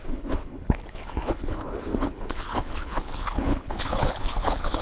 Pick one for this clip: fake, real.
fake